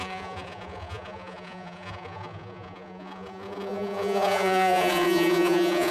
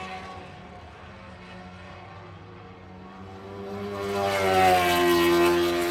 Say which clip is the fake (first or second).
first